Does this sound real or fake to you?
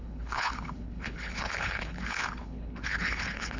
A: fake